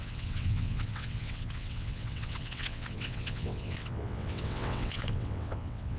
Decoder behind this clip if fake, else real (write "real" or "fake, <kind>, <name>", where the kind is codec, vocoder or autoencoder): fake, vocoder, WaveNeXt